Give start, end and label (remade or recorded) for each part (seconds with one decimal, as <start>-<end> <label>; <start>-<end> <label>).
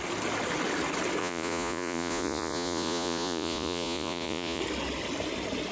0.0-1.2 recorded; 1.2-4.6 remade; 4.6-5.7 recorded